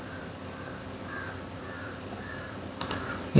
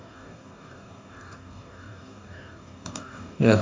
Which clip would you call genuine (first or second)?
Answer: first